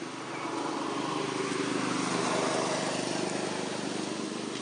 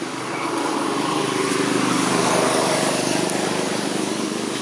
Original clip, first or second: first